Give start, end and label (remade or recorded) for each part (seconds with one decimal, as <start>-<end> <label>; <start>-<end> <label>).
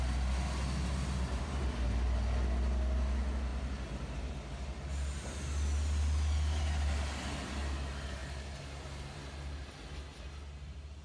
0.0-11.0 recorded